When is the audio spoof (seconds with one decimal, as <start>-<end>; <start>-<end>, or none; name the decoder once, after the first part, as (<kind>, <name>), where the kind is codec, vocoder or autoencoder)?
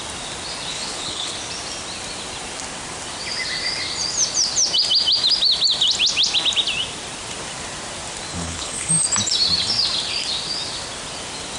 0.7-1.3 (codec, HILCodec); 8.3-8.9